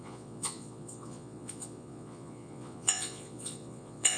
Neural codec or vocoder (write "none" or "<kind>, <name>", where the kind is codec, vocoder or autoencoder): vocoder, Vocos